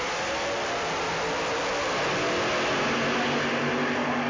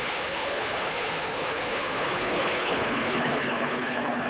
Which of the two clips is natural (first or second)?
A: first